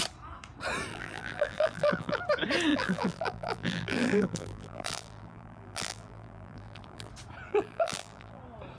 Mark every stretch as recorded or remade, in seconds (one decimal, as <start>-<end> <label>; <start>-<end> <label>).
0.0-0.9 recorded; 0.9-2.2 remade; 2.2-2.7 recorded; 2.7-7.1 remade; 7.1-7.5 recorded; 7.5-8.4 remade; 8.4-8.8 recorded